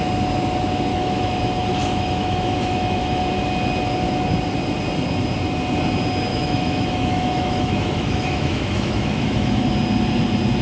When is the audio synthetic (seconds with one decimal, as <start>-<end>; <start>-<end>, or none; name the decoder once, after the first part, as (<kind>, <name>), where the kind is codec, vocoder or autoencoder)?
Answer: 0.9-1.4 (autoencoder, DAC-VAE); 1.8-3.2; 6.3-9.6